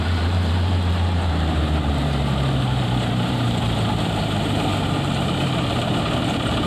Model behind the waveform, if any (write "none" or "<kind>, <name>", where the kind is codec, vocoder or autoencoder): vocoder, BigVGAN v2